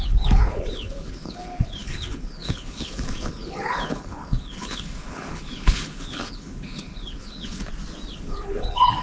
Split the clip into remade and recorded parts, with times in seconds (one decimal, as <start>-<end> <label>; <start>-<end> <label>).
0.0-7.6 remade; 7.6-8.1 recorded; 8.1-9.0 remade

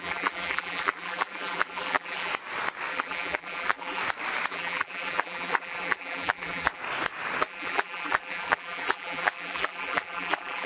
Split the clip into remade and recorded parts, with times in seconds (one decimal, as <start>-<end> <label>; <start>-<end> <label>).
0.0-2.3 remade; 2.3-2.9 recorded; 2.9-4.0 remade; 4.0-4.5 recorded; 4.5-6.8 remade; 6.8-7.4 recorded; 7.4-10.7 remade

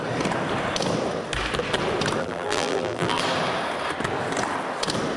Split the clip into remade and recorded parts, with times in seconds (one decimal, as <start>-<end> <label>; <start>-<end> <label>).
0.0-2.2 recorded; 2.2-3.2 remade; 3.2-5.2 recorded

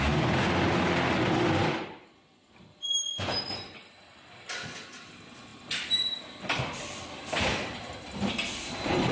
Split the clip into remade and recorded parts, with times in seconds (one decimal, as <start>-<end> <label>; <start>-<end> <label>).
0.0-9.1 recorded